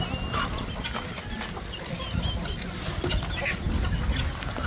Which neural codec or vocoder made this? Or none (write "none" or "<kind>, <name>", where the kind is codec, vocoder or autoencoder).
none